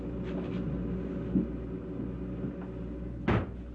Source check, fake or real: real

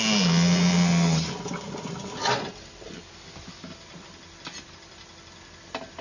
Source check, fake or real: real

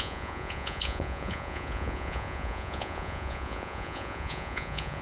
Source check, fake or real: fake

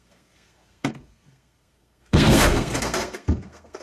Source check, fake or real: fake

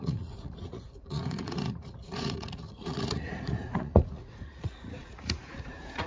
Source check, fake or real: fake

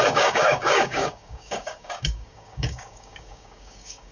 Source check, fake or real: fake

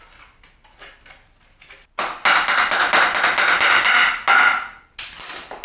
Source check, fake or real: real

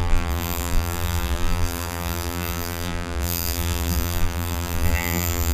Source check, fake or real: fake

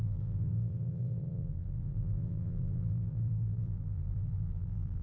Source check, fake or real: fake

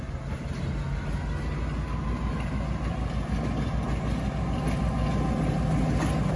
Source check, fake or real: real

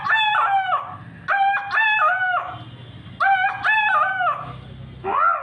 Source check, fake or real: real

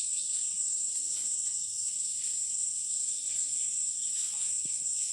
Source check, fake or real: fake